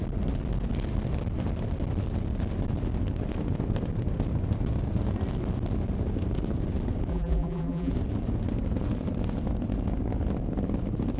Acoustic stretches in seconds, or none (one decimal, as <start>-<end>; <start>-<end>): 0.0-7.1; 7.9-11.2